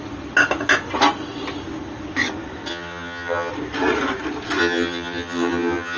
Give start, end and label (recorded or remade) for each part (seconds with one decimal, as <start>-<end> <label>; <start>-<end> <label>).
0.0-2.7 recorded; 2.7-3.5 remade; 3.5-4.6 recorded; 4.6-6.0 remade